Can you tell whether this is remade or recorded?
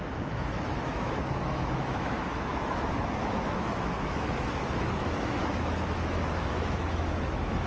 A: remade